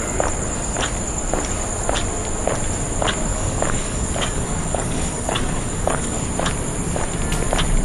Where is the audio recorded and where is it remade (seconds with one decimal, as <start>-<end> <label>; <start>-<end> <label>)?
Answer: 0.0-3.3 recorded; 3.3-6.2 remade; 6.2-7.8 recorded